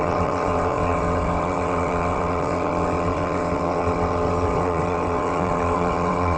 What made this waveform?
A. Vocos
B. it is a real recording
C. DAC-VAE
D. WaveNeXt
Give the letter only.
D